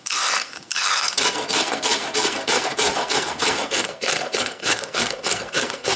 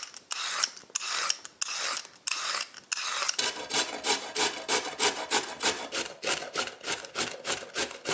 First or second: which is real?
second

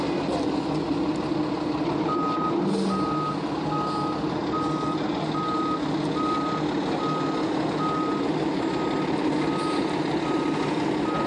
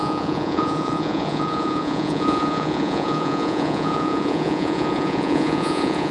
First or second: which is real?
first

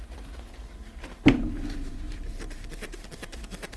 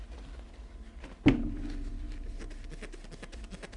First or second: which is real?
second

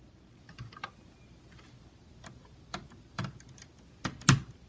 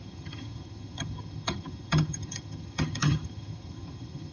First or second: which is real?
first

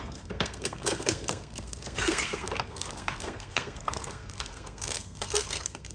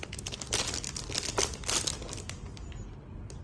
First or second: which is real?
second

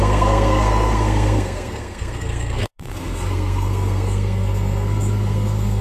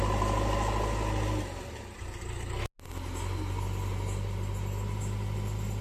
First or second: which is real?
second